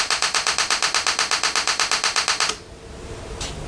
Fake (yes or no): no